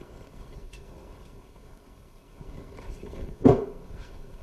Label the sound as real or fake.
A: fake